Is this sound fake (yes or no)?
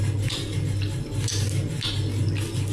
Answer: no